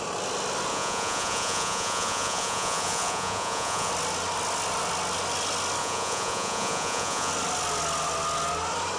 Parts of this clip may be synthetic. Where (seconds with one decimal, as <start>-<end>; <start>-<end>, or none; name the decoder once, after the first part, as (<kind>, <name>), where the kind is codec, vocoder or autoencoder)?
0.7-3.9 (vocoder, Vocos); 5.8-7.3